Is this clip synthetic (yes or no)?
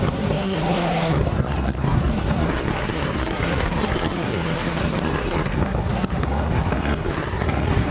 yes